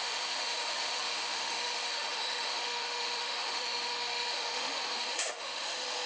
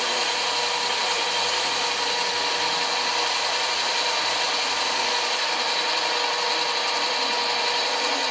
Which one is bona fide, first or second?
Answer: second